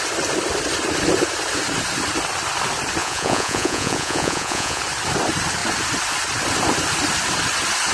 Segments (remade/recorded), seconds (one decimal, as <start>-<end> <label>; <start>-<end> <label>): 0.0-3.0 recorded; 3.0-4.8 remade; 4.8-7.9 recorded